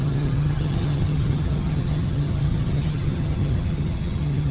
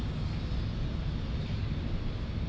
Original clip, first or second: second